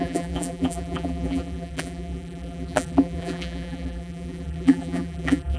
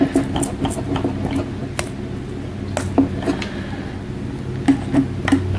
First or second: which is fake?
first